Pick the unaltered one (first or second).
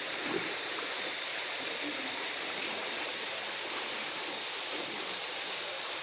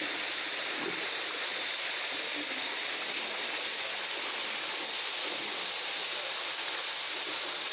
second